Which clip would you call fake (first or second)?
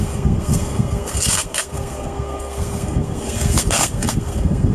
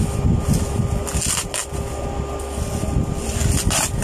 first